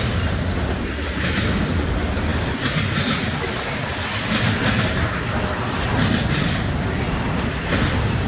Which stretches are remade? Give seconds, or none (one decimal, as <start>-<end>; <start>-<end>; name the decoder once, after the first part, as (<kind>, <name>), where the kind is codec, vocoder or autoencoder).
none